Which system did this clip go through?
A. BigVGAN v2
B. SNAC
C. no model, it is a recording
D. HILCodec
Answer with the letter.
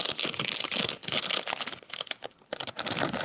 A